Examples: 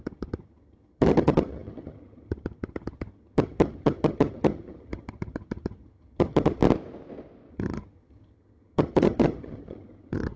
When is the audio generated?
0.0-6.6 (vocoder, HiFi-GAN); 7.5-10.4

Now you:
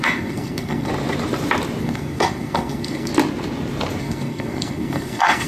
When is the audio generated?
0.0-0.9 (codec, SNAC); 1.8-3.1; 4.0-5.5

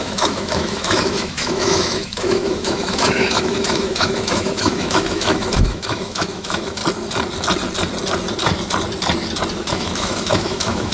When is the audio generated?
0.0-6.8 (autoencoder, DAC-VAE); 9.7-10.9

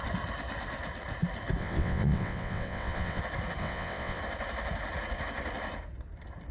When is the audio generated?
1.6-3.2 (vocoder, WaveNeXt); 3.6-4.2

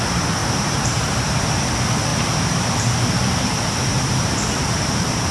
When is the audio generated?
0.4-1.4 (vocoder, BigVGAN v2); 2.1-2.8; 3.9-5.3

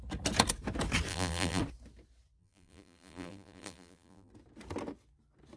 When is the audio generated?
1.1-1.6 (vocoder, BigVGAN v2); 2.4-4.3